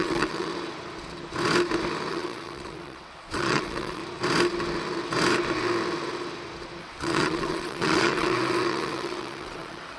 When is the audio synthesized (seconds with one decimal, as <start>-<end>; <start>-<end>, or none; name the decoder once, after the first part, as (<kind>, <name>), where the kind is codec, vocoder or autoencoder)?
0.0-0.5 (vocoder, WaveNeXt); 2.1-4.0; 6.8-10.0